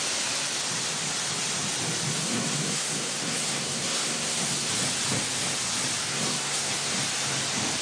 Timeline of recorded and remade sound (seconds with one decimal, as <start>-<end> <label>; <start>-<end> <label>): 0.0-2.1 recorded; 2.1-4.7 remade; 4.7-6.0 recorded; 6.0-6.9 remade; 6.9-7.8 recorded